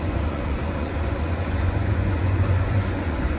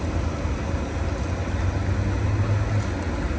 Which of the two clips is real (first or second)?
second